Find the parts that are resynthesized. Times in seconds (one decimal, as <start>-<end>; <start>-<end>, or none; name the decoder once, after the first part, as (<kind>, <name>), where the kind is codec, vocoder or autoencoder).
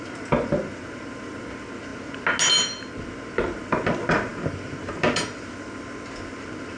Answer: none